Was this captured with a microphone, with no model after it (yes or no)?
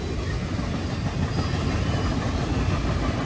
yes